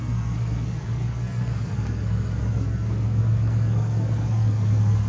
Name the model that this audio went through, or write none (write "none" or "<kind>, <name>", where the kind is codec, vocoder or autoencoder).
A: codec, SNAC